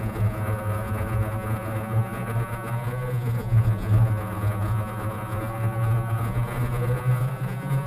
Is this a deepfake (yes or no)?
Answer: yes